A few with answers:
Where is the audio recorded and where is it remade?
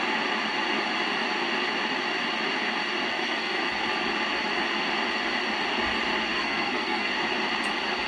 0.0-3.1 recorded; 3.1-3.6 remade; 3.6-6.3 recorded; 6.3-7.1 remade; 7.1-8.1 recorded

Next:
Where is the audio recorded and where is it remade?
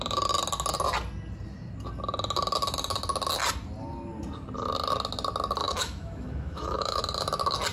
0.0-5.6 recorded; 5.6-7.0 remade; 7.0-7.7 recorded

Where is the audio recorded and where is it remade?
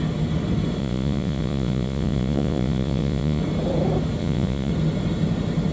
0.0-0.8 recorded; 0.8-3.4 remade; 3.4-4.2 recorded; 4.2-4.7 remade; 4.7-5.7 recorded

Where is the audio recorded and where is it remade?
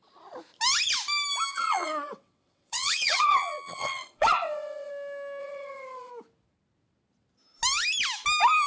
0.0-1.5 recorded; 1.5-4.9 remade; 4.9-5.4 recorded; 5.4-6.1 remade; 6.1-8.7 recorded